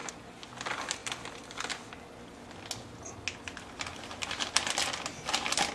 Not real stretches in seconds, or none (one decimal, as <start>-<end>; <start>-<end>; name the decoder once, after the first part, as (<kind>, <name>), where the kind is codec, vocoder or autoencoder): none